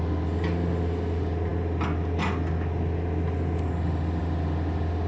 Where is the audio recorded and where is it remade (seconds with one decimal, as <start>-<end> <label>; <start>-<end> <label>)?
0.0-5.1 recorded